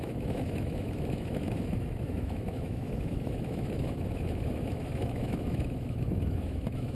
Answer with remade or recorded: remade